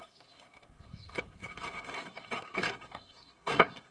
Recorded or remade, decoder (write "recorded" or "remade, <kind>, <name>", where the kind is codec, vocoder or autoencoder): remade, codec, SNAC